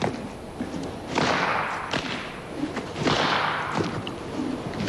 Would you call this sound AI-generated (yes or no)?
no